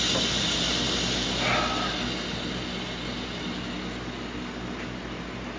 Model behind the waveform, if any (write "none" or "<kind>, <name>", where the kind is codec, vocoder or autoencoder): none